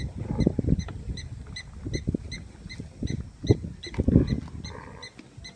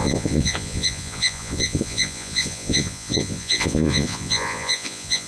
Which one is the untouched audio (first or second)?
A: first